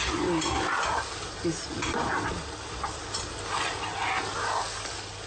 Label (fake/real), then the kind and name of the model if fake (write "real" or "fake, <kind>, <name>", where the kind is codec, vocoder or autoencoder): real